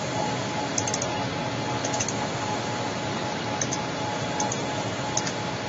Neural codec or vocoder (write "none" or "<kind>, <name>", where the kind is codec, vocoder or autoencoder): none